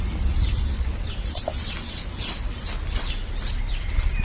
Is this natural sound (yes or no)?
no